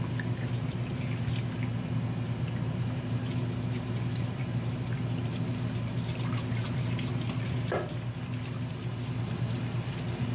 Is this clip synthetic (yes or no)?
no